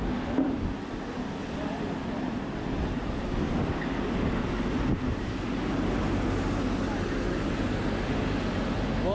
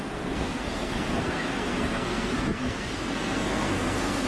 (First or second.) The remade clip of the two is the second